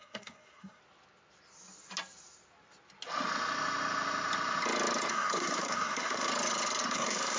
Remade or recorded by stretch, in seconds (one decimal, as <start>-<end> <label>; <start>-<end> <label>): 0.0-0.8 remade; 0.8-5.1 recorded; 5.1-6.3 remade; 6.3-6.9 recorded; 6.9-7.4 remade

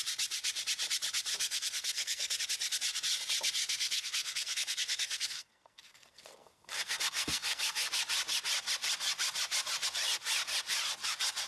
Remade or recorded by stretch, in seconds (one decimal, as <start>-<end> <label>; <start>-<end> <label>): 0.0-1.3 recorded; 1.3-2.4 remade; 2.4-3.6 recorded; 3.6-7.9 remade; 7.9-11.5 recorded

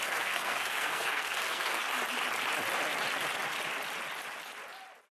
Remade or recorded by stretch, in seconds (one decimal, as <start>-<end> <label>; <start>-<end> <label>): 0.0-1.8 remade; 1.8-5.1 recorded

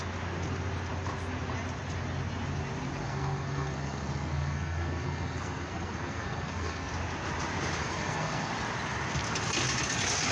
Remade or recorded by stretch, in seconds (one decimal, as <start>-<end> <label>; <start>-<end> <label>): 0.0-3.0 recorded; 3.0-6.9 remade; 6.9-7.8 recorded; 7.8-8.5 remade; 8.5-10.3 recorded

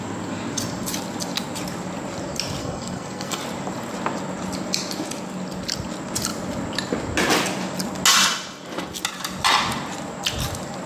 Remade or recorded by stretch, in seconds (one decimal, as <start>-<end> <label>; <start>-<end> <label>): 0.0-2.6 recorded; 2.6-3.4 remade; 3.4-10.9 recorded

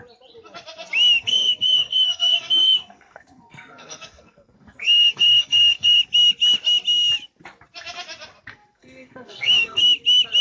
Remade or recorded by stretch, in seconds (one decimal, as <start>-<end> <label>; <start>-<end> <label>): 0.0-1.2 recorded; 1.2-6.0 remade; 6.0-8.5 recorded; 8.5-9.8 remade; 9.8-10.4 recorded

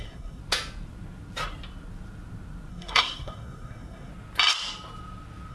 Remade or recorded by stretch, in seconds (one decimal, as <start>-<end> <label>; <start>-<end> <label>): 0.0-0.4 remade; 0.4-2.7 recorded; 2.7-4.1 remade; 4.1-5.5 recorded